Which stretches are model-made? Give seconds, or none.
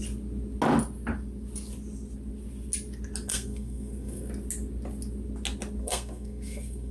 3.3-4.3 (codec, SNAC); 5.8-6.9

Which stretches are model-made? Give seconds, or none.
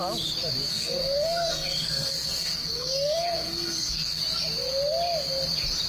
0.7-4.2 (codec, SNAC)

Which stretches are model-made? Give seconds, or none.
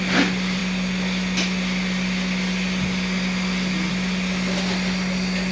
none